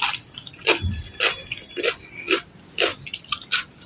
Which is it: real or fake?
real